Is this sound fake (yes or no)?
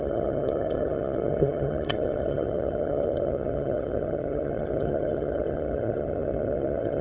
yes